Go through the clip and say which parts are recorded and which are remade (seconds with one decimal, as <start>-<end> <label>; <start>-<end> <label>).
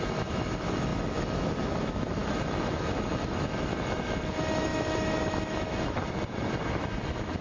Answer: 0.0-7.4 remade